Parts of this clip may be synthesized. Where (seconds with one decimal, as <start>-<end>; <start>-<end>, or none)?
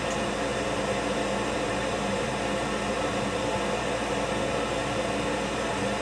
none